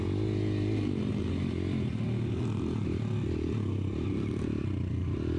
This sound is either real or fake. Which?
real